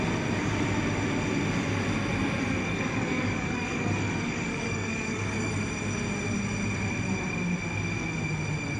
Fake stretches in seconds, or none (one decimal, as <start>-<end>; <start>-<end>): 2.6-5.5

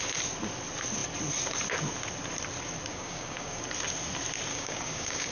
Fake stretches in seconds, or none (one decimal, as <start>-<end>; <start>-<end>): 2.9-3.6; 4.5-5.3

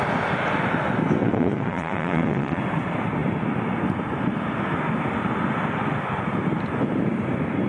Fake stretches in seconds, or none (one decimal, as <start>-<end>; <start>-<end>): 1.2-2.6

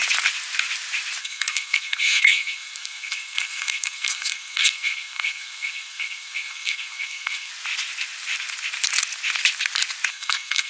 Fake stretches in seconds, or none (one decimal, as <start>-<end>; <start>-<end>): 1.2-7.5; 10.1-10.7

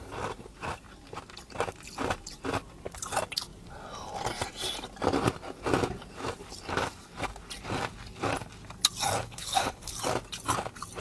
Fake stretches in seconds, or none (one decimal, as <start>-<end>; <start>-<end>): 9.2-9.9

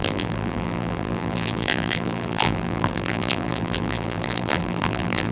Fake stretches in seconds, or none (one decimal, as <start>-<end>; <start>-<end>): 0.0-5.3

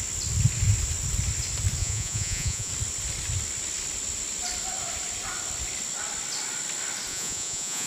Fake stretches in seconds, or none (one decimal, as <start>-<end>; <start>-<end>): 1.8-2.7; 7.1-7.9

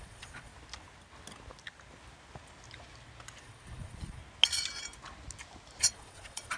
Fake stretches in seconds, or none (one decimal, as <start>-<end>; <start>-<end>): 0.0-0.5; 3.4-4.2; 5.8-6.6